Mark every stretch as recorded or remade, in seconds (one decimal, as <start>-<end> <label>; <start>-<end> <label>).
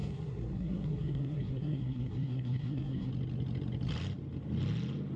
0.0-3.1 remade; 3.1-5.2 recorded